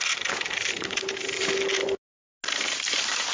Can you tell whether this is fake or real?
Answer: real